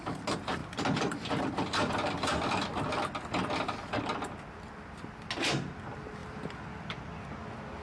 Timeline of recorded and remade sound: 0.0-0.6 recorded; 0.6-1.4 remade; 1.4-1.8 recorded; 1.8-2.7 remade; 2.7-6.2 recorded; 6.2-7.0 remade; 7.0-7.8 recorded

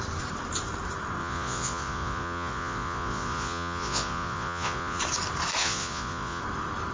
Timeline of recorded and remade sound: 0.0-1.2 recorded; 1.2-5.0 remade; 5.0-5.6 recorded; 5.6-6.4 remade; 6.4-6.9 recorded

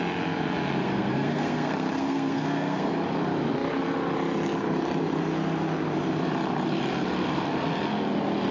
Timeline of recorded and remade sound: 0.0-0.8 recorded; 0.8-2.9 remade; 2.9-8.5 recorded

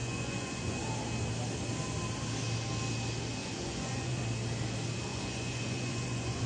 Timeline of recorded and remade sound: 0.0-0.8 remade; 0.8-3.4 recorded; 3.4-4.2 remade; 4.2-5.1 recorded; 5.1-6.5 remade